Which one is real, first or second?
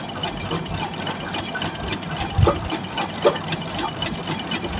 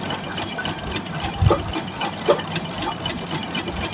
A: first